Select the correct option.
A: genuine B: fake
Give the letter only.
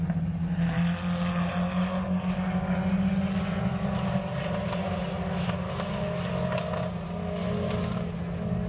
A